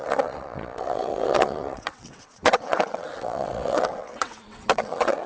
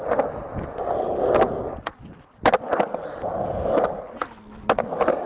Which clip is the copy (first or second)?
first